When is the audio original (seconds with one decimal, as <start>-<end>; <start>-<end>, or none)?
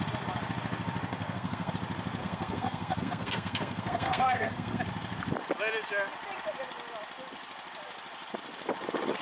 0.0-1.1; 1.7-2.2; 4.8-9.2